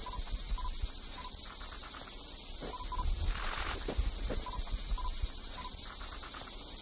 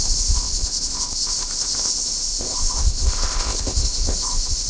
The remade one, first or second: second